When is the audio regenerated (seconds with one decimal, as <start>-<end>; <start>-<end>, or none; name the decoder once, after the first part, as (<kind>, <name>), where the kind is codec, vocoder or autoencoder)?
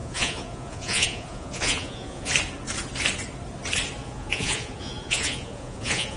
0.0-2.3 (vocoder, Vocos); 4.0-6.2